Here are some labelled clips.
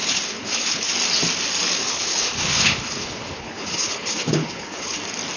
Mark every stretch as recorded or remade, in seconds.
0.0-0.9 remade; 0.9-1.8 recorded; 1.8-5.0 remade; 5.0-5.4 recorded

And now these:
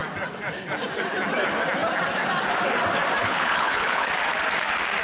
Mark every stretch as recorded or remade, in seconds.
0.0-3.2 recorded; 3.2-4.1 remade; 4.1-5.0 recorded

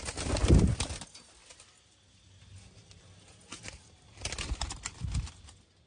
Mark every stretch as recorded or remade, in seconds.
0.0-5.9 recorded

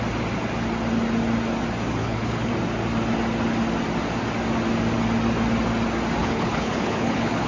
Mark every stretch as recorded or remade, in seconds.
0.0-2.0 recorded; 2.0-2.5 remade; 2.5-6.2 recorded; 6.2-7.5 remade

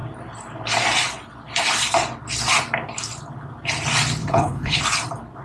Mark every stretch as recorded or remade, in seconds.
0.0-4.2 recorded; 4.2-4.8 remade; 4.8-5.4 recorded